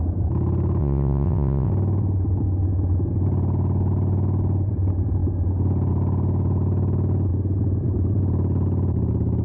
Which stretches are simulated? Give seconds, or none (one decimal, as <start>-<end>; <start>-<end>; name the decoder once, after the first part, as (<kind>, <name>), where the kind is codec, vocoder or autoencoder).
0.8-1.7 (vocoder, WaveNeXt)